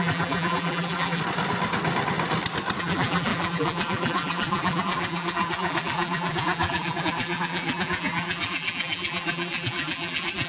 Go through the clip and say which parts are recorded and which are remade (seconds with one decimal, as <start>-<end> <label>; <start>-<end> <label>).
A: 0.0-1.2 remade; 1.2-2.8 recorded; 2.8-10.5 remade